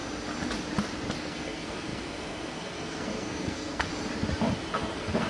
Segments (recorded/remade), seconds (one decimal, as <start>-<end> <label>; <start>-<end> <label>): 0.0-1.2 recorded; 1.2-3.9 remade; 3.9-4.7 recorded; 4.7-5.3 remade